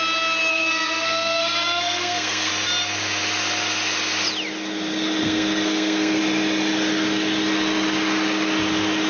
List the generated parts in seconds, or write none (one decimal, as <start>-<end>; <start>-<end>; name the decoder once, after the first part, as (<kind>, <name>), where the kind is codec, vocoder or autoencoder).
0.5-2.5 (codec, SNAC); 5.2-6.2